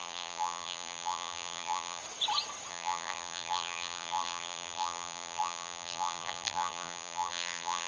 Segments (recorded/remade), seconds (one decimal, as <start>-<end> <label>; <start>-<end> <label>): 0.0-2.0 remade; 2.0-2.7 recorded; 2.7-7.9 remade